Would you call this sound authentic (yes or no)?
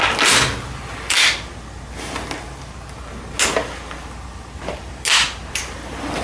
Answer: yes